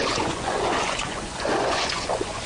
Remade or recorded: remade